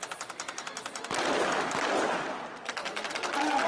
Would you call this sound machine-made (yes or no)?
no